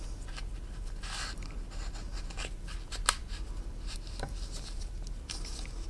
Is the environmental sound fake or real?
real